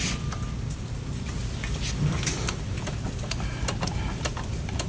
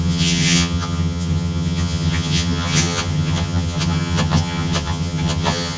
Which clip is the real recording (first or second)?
first